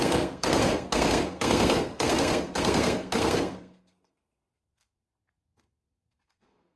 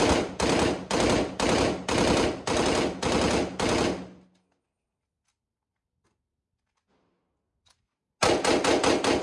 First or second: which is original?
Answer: second